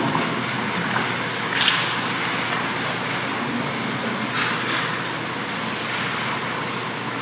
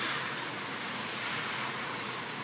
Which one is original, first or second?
first